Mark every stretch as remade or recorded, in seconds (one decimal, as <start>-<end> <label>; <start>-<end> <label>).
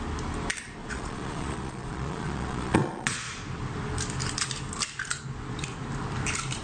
0.0-0.8 recorded; 0.8-3.3 remade; 3.3-6.6 recorded